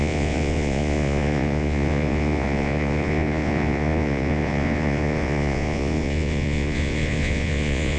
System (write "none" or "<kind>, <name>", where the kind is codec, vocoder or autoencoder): vocoder, Vocos